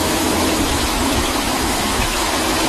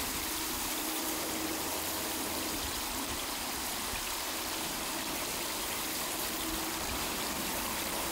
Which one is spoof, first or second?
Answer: first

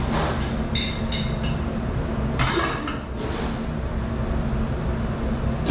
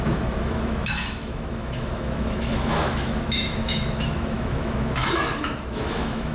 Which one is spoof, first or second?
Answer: second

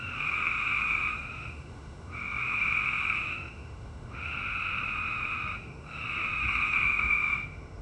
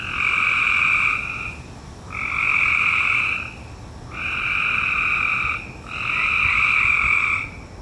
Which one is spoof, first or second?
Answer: first